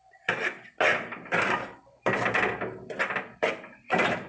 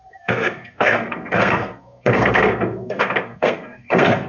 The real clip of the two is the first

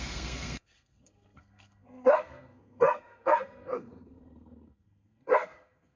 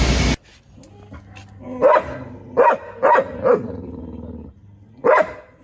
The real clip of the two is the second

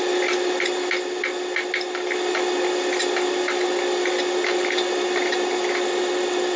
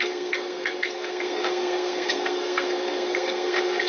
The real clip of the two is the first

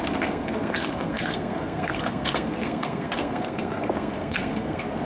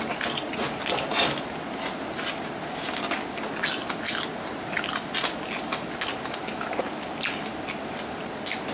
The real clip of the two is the second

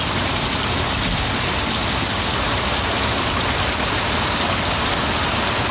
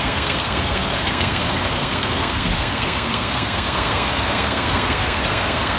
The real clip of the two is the first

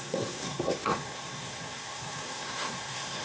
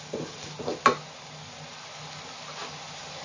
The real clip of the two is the second